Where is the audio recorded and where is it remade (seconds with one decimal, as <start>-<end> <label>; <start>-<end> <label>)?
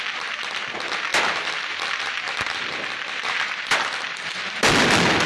0.0-1.1 recorded; 1.1-4.3 remade; 4.3-5.3 recorded